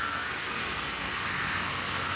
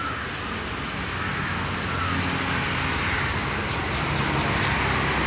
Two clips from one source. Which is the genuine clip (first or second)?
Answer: second